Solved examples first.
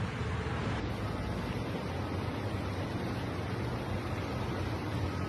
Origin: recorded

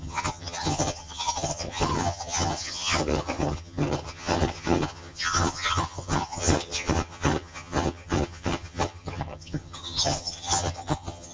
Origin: remade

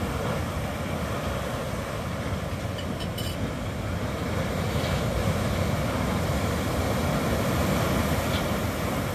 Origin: recorded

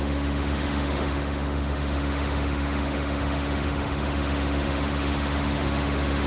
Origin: remade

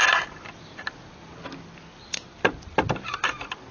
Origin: recorded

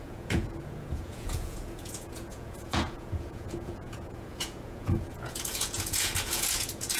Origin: remade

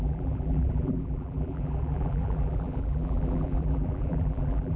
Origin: remade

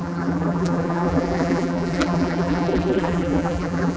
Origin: remade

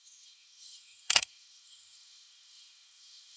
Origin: remade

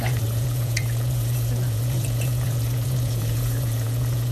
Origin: remade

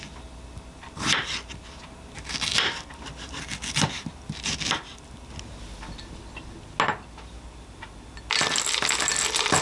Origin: recorded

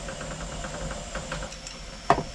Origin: recorded